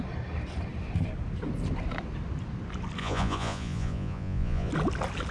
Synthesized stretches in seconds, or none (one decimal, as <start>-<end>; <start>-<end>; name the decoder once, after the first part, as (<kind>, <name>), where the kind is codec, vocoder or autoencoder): 3.0-4.7 (vocoder, Vocos)